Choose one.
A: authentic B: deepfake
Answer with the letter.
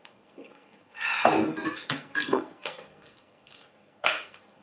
B